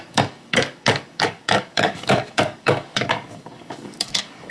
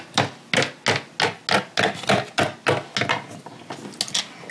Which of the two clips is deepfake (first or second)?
first